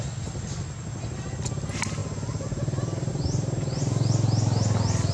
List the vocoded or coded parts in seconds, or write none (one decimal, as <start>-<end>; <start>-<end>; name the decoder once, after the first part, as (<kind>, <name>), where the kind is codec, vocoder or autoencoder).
none